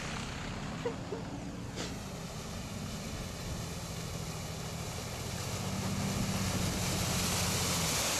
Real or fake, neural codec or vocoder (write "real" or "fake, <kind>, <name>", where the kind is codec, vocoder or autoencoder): real